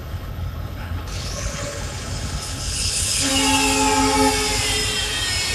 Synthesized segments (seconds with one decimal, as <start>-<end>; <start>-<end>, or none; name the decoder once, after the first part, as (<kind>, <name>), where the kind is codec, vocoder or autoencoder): 0.0-3.3 (codec, HILCodec)

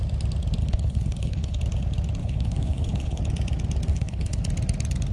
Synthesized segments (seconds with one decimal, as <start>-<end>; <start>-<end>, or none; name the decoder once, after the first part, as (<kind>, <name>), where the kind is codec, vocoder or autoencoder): 0.6-1.6 (codec, HILCodec); 2.2-3.2; 3.9-4.4

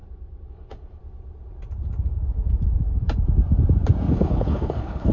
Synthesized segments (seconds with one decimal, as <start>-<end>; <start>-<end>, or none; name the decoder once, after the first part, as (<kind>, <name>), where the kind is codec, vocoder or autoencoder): 0.5-1.0 (codec, HILCodec); 4.1-5.1

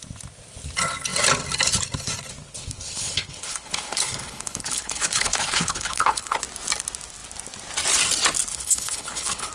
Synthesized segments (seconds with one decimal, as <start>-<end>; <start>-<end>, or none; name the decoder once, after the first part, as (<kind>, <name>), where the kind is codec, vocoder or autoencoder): 2.6-6.4 (codec, HILCodec); 8.5-9.5

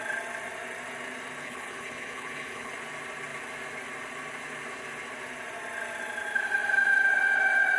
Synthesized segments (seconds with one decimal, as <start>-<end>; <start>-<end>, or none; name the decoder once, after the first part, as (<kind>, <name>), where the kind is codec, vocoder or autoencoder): 1.4-2.7 (codec, HILCodec)

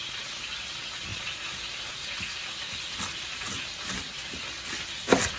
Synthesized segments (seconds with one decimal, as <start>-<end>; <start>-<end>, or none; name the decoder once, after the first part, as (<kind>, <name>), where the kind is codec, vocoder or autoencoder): none

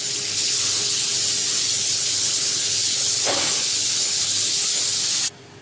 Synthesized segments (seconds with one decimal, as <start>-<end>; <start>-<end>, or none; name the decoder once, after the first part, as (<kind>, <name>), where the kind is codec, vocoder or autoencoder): 0.0-1.1 (codec, HILCodec); 1.6-4.7